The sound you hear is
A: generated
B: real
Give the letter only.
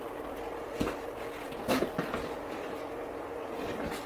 B